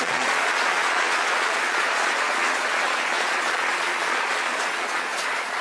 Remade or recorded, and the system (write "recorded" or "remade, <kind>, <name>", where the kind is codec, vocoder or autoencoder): remade, vocoder, Vocos